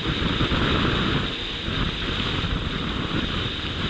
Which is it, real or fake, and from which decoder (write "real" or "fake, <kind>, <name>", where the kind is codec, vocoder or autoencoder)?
real